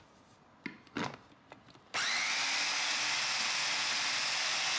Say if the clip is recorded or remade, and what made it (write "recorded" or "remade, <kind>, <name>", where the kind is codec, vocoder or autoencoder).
recorded